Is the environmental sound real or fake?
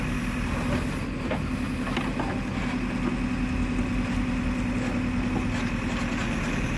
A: real